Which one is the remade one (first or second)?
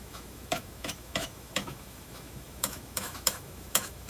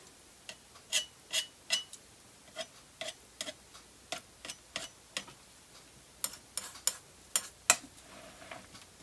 first